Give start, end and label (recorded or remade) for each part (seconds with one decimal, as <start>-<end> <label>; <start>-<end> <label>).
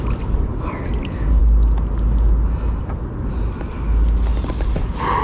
0.0-5.2 recorded